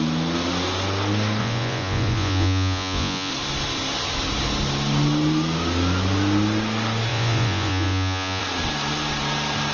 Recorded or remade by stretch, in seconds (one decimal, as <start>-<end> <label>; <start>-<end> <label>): 0.0-1.4 recorded; 1.4-3.3 remade; 3.3-7.1 recorded; 7.1-8.4 remade; 8.4-9.7 recorded

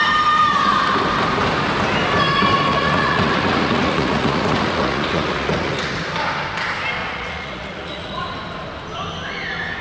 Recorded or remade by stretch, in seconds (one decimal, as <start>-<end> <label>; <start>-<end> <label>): 0.0-2.7 recorded; 2.7-5.9 remade; 5.9-7.0 recorded; 7.0-8.2 remade; 8.2-9.8 recorded

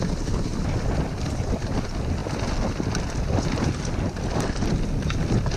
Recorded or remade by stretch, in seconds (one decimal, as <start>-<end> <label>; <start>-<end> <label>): 0.0-5.6 recorded

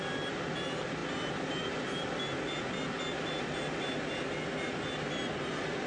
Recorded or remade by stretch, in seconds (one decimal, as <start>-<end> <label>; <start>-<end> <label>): 0.0-5.9 recorded

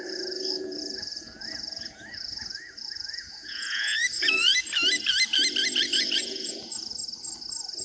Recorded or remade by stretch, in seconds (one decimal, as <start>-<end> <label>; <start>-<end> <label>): 0.0-4.5 remade; 4.5-5.8 recorded; 5.8-6.9 remade; 6.9-7.8 recorded

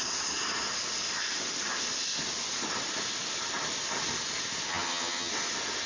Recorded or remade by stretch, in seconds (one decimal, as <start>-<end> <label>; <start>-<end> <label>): 0.0-4.7 recorded; 4.7-5.3 remade; 5.3-5.9 recorded